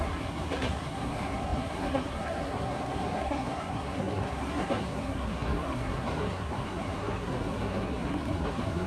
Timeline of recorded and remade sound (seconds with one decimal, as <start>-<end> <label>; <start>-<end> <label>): 0.0-8.9 remade